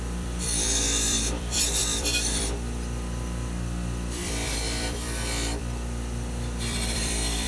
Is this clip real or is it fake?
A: fake